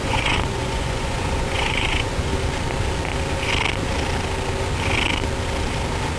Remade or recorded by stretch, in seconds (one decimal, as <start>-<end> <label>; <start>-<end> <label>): 0.0-2.3 remade; 2.3-6.2 recorded